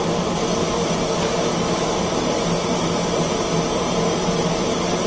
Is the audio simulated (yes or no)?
no